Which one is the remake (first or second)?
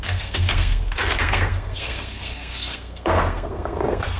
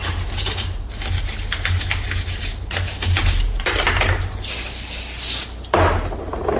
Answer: first